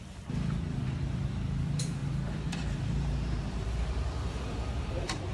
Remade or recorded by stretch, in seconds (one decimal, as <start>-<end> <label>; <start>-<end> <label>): 0.0-5.3 remade